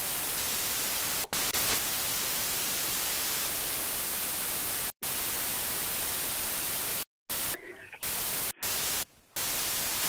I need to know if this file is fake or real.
real